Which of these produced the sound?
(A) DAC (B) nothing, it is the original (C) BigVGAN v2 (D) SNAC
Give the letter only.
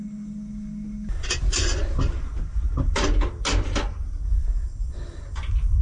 B